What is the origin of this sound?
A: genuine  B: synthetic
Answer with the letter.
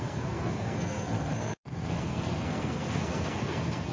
B